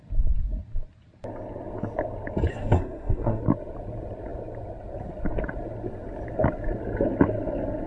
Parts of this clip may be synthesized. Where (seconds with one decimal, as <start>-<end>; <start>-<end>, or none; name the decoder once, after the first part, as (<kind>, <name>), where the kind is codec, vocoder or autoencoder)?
2.5-3.4 (codec, SNAC)